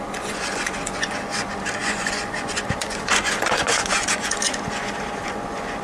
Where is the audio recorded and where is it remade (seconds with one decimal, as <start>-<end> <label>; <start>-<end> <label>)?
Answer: 0.0-5.8 remade